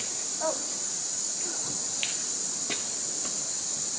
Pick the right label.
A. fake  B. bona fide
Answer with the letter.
B